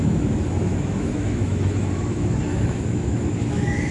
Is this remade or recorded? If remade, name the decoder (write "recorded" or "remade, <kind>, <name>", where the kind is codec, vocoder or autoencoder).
remade, autoencoder, DAC-VAE